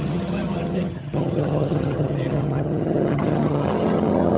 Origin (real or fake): fake